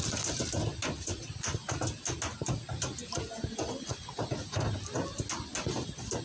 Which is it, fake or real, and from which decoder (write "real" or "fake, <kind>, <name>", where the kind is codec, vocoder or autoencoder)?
real